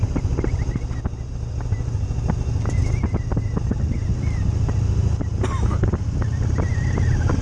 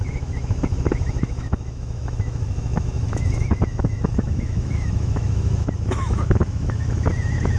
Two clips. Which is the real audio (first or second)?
first